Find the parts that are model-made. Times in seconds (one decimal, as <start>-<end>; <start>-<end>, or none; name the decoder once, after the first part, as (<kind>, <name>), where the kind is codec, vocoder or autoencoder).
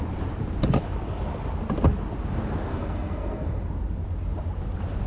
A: 2.7-3.5 (codec, SNAC)